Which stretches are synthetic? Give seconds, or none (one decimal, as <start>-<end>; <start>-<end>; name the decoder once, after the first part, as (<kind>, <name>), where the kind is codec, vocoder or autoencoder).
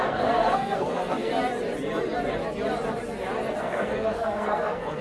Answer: 0.0-1.3 (codec, SNAC); 3.6-5.0